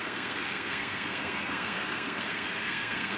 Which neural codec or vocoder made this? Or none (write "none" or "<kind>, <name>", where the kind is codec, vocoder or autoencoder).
codec, SNAC